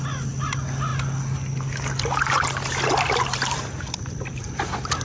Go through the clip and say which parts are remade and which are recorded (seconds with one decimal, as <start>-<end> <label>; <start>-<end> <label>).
0.0-5.0 recorded